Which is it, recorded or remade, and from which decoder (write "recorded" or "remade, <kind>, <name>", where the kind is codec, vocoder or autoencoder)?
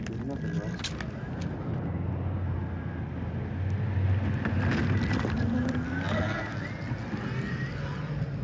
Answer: recorded